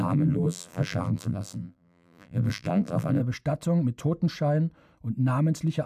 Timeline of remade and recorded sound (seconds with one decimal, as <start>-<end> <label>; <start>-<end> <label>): 0.0-3.2 remade; 3.2-5.9 recorded